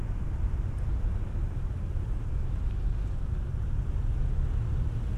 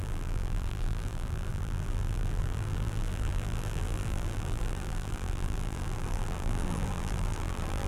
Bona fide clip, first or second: first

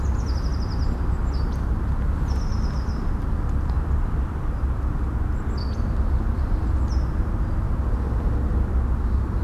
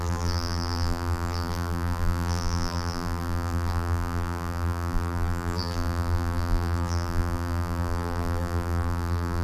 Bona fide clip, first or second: first